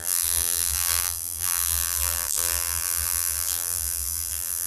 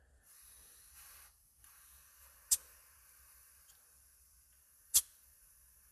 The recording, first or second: second